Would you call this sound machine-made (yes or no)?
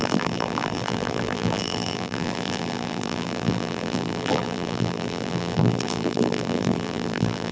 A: yes